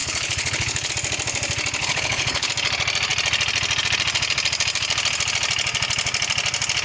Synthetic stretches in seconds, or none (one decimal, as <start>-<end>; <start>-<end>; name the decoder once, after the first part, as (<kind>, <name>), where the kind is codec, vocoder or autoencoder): 0.0-0.9 (codec, HILCodec); 1.8-2.5